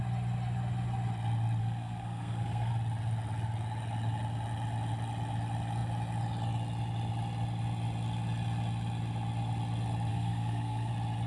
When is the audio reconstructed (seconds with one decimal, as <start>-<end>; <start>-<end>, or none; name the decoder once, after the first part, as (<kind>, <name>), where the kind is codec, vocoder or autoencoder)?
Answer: 1.6-2.7 (codec, SNAC); 10.1-10.9